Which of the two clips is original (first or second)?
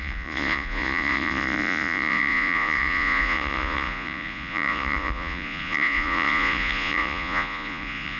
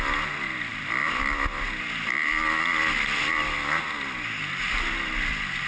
second